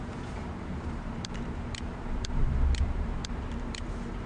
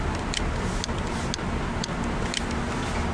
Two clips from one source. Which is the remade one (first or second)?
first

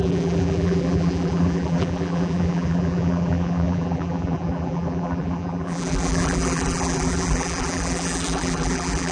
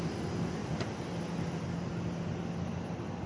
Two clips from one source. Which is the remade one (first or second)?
first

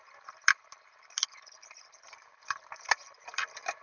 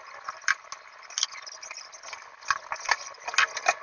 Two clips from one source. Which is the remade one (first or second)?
first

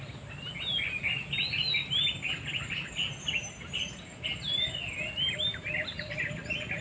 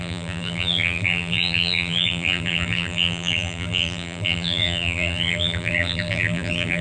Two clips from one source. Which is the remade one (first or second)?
second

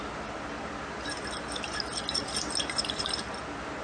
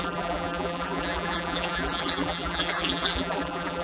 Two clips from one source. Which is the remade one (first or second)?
second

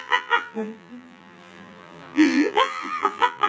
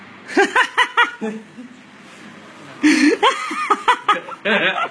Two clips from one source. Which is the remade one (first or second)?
first